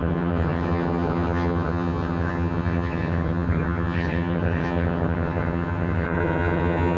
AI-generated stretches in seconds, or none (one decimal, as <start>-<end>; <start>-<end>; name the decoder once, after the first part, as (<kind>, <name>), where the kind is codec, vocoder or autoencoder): 0.0-7.0 (vocoder, HiFi-GAN)